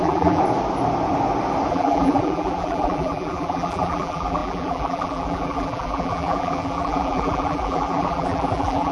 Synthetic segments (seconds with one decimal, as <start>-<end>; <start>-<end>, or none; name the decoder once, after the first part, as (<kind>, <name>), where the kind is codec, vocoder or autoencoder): 0.0-0.4 (vocoder, BigVGAN v2); 1.7-8.9